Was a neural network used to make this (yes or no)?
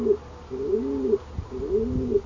no